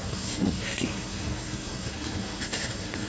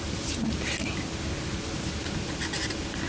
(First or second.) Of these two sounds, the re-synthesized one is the first